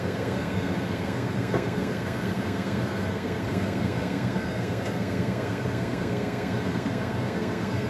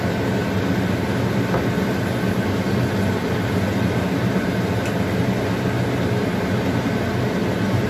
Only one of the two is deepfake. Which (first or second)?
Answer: first